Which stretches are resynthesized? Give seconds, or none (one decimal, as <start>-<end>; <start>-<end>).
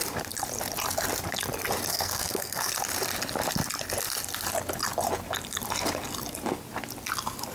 1.9-2.7